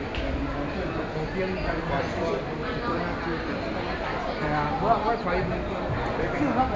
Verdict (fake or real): real